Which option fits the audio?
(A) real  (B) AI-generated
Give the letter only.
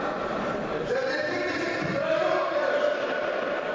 A